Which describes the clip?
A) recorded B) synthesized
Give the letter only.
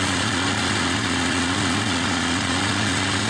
B